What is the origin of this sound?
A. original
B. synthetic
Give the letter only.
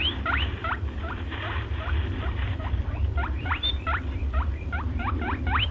B